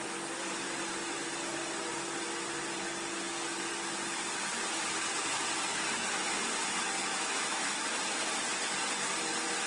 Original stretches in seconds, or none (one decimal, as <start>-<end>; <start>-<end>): 0.0-7.0; 7.7-9.7